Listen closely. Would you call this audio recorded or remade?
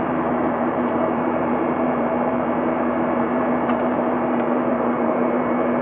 remade